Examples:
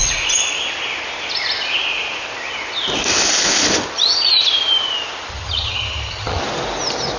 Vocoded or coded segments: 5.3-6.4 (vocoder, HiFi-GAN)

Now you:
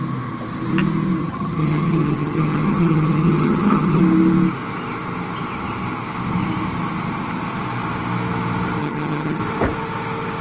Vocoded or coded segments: 1.2-4.0 (vocoder, HiFi-GAN); 8.8-9.4

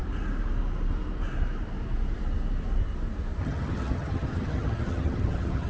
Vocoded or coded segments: 3.4-5.7 (vocoder, HiFi-GAN)

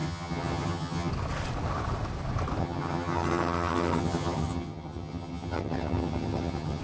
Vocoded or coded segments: 0.0-1.1 (vocoder, HiFi-GAN); 2.6-6.8